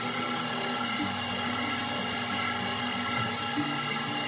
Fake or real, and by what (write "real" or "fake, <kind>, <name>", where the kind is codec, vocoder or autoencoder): real